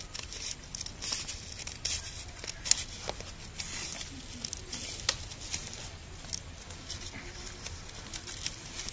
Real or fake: real